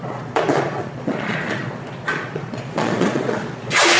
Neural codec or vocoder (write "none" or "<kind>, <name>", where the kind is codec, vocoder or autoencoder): vocoder, Vocos